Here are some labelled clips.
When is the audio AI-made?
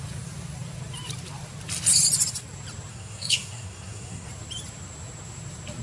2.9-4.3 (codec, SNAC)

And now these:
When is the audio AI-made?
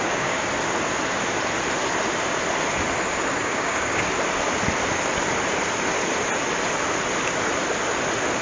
0.0-0.5 (codec, DAC); 3.4-4.1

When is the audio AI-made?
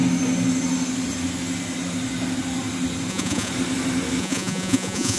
3.1-3.5 (vocoder, Vocos); 4.2-5.2